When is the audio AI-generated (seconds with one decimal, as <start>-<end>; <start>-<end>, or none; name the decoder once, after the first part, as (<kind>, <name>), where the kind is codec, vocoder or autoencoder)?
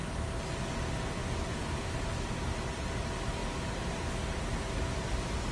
0.0-0.6 (vocoder, BigVGAN v2)